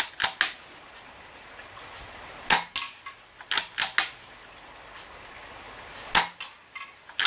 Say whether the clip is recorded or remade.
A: recorded